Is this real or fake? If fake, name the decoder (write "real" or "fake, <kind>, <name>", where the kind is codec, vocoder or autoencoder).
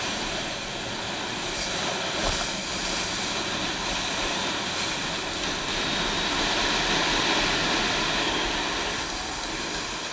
real